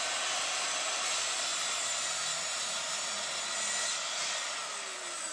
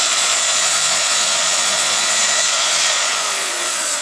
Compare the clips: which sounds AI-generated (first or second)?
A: second